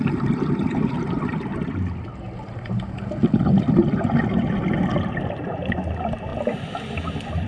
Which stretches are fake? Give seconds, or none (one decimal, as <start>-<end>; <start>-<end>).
3.2-4.2; 6.3-7.5